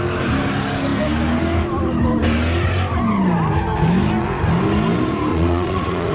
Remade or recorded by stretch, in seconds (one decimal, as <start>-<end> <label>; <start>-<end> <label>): 0.0-5.3 recorded; 5.3-6.1 remade